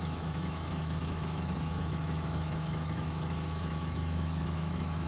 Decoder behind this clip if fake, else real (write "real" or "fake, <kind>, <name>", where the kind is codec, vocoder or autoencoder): fake, autoencoder, DAC-VAE